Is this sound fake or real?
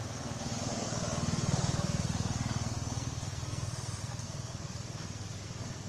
fake